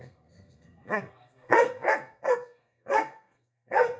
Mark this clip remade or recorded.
remade